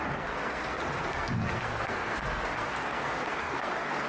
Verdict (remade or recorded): remade